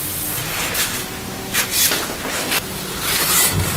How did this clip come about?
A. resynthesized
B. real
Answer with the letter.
B